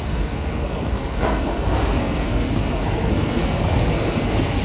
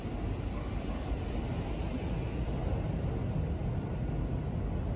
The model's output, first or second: first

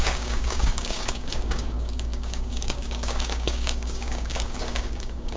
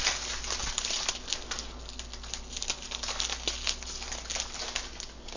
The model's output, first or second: first